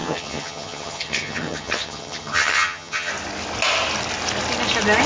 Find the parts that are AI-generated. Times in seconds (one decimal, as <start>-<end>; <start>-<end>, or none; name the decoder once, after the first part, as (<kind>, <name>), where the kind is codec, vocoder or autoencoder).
0.0-3.1 (vocoder, HiFi-GAN)